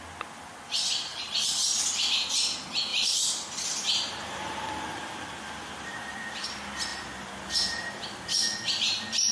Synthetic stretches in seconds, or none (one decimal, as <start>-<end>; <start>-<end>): 1.1-2.1; 2.9-3.7